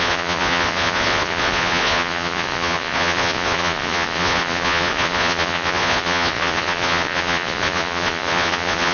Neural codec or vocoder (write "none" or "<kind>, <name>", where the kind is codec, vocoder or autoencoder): vocoder, Vocos